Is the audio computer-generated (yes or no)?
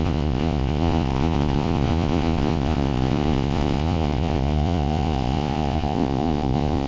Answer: yes